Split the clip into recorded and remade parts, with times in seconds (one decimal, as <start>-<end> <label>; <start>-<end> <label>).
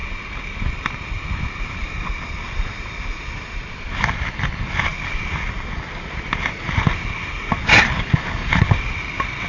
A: 0.0-9.5 recorded